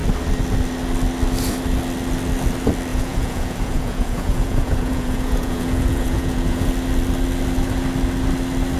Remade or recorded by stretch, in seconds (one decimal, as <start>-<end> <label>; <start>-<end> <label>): 0.0-2.9 recorded; 2.9-6.7 remade; 6.7-8.8 recorded

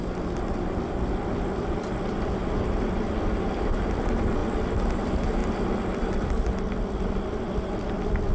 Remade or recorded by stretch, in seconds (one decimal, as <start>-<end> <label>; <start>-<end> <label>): 0.0-2.4 remade; 2.4-3.6 recorded; 3.6-4.4 remade; 4.4-4.9 recorded; 4.9-5.4 remade; 5.4-7.0 recorded; 7.0-8.3 remade

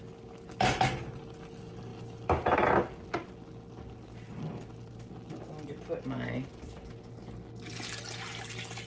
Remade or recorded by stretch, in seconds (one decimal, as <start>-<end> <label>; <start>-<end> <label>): 0.0-8.9 recorded

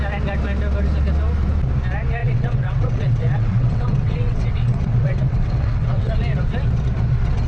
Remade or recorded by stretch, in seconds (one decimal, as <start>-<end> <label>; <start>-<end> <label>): 0.0-2.2 recorded; 2.2-6.1 remade; 6.1-7.5 recorded

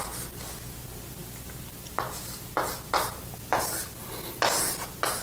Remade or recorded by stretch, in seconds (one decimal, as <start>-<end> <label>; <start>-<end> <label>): 0.0-5.2 recorded